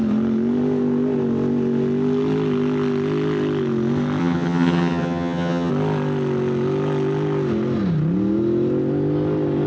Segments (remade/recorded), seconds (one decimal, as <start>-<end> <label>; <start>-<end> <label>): 0.0-4.2 recorded; 4.2-5.7 remade; 5.7-9.7 recorded